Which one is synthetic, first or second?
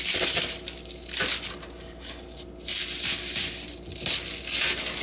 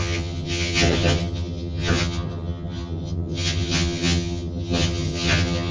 second